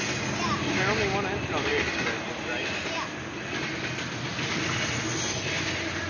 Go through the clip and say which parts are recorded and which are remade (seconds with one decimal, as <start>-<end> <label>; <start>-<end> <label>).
0.0-6.1 recorded